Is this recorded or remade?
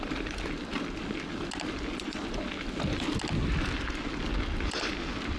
recorded